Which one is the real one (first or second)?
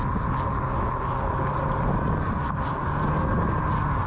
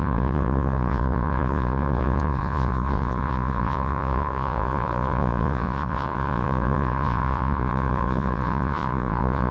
first